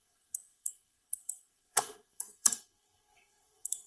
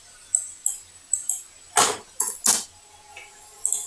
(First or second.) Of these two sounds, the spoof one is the first